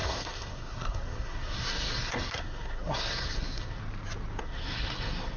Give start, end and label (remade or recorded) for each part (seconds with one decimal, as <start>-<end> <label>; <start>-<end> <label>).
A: 0.0-3.8 remade; 3.8-4.4 recorded; 4.4-5.4 remade